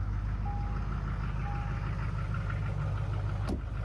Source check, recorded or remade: recorded